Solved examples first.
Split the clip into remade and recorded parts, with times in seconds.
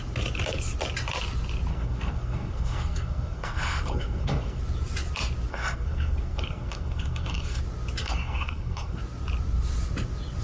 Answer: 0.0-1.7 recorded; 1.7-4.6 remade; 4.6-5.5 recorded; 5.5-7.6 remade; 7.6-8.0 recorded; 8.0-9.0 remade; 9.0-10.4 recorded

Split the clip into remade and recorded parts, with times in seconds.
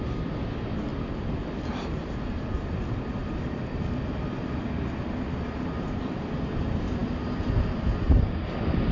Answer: 0.0-8.9 recorded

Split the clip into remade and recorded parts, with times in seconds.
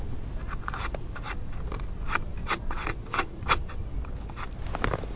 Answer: 0.0-2.4 recorded; 2.4-3.6 remade; 3.6-5.2 recorded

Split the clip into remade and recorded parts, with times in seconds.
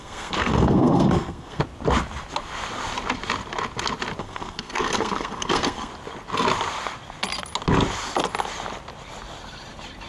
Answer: 0.0-1.6 remade; 1.6-4.2 recorded; 4.2-5.9 remade; 5.9-10.1 recorded